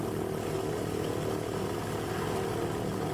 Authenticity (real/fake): real